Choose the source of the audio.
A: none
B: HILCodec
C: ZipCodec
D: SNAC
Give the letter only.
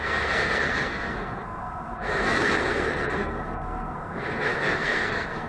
D